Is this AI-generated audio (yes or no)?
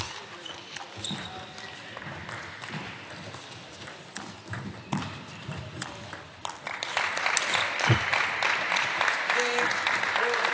no